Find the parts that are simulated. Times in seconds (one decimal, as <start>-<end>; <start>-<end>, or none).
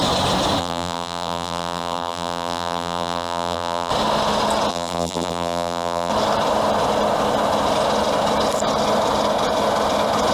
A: 0.6-3.9; 4.7-6.1